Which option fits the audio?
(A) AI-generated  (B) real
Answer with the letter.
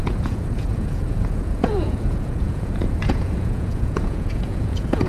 A